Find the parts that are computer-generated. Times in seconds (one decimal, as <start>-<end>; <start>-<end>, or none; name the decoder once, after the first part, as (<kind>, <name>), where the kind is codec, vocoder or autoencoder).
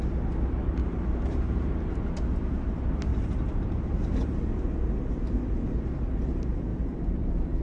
0.8-1.9 (vocoder, BigVGAN v2); 3.1-4.1; 6.7-7.6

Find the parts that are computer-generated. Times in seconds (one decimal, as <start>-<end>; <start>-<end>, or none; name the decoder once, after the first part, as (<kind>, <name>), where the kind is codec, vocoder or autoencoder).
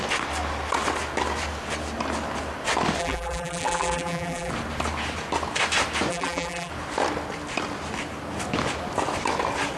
3.0-4.5 (vocoder, BigVGAN v2); 6.1-6.7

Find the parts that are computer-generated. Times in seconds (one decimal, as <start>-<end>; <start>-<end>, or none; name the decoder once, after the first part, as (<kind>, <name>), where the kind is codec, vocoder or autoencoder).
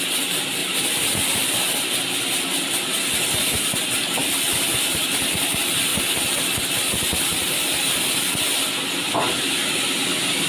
0.6-1.4 (vocoder, BigVGAN v2); 4.2-5.3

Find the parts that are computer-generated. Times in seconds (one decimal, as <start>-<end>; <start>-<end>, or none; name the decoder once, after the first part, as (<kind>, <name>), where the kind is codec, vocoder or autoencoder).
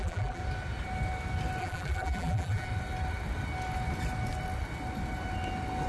0.0-0.4 (vocoder, BigVGAN v2); 1.6-2.7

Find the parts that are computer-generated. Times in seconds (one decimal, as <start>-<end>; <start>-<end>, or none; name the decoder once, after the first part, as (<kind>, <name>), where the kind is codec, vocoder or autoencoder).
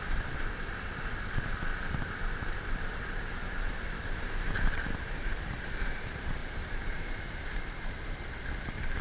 0.0-9.0 (vocoder, BigVGAN v2)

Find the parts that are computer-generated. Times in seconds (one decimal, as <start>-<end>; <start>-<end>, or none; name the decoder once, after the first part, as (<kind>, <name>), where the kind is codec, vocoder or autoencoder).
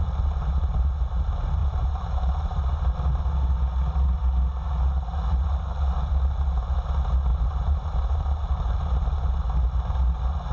1.6-2.6 (vocoder, BigVGAN v2); 7.3-8.4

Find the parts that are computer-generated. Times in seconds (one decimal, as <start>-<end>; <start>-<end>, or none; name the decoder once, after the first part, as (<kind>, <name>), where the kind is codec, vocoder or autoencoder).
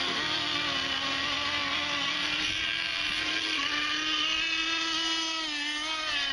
none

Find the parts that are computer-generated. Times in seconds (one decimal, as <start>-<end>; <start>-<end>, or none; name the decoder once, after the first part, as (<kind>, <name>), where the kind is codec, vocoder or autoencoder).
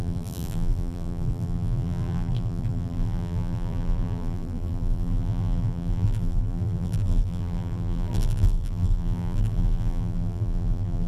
0.0-11.1 (vocoder, BigVGAN v2)